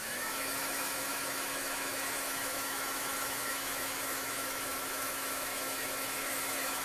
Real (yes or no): no